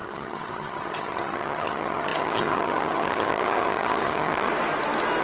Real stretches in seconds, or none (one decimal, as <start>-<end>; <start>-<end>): 4.5-5.2